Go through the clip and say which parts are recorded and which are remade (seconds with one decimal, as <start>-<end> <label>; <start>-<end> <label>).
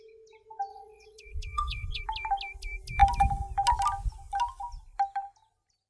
0.0-0.7 recorded; 0.7-2.0 remade; 2.0-5.9 recorded